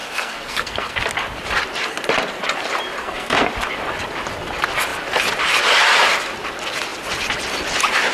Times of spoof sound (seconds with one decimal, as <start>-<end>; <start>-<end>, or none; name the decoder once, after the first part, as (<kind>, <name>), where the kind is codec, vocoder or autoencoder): 0.0-1.0 (codec, SNAC); 3.0-3.5